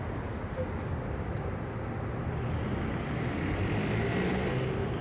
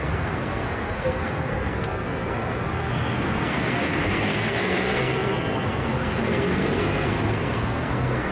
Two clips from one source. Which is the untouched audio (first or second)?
first